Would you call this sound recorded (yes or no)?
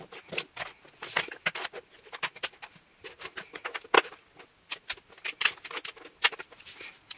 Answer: yes